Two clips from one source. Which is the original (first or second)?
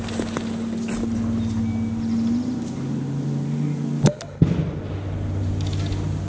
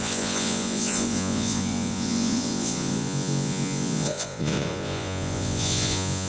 first